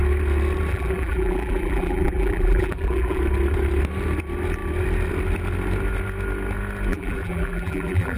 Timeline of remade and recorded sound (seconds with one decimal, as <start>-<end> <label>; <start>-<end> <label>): 0.0-0.7 recorded; 0.7-3.2 remade; 3.2-6.9 recorded; 6.9-8.2 remade